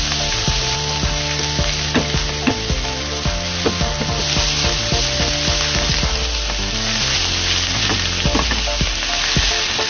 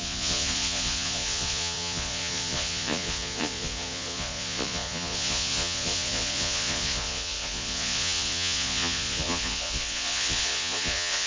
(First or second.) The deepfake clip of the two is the second